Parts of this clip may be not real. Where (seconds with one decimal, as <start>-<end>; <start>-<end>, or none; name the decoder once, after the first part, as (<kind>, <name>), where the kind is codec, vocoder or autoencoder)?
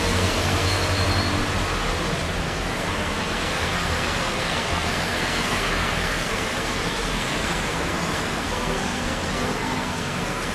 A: 0.0-0.8 (codec, SNAC); 2.4-10.5